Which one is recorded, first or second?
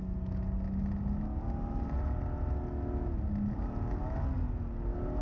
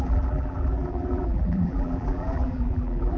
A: first